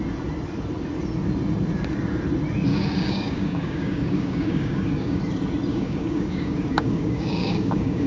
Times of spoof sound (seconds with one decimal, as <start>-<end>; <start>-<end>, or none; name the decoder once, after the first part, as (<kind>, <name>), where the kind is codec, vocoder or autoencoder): 2.7-5.2 (codec, DAC); 5.7-8.1